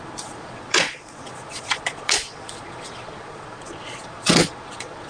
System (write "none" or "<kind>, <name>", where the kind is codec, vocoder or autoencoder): vocoder, Vocos